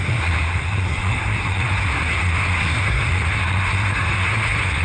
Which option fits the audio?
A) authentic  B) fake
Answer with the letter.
B